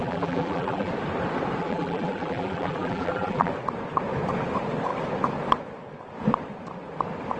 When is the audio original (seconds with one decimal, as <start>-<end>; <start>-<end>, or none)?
0.9-1.6; 3.5-7.4